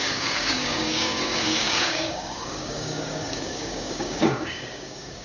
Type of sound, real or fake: fake